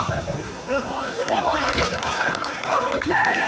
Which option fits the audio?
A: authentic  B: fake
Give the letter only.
B